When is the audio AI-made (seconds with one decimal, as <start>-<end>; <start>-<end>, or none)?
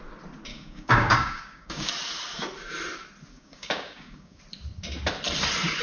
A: 0.5-1.9; 3.3-4.4